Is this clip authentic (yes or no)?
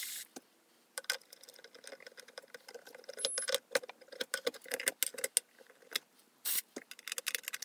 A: yes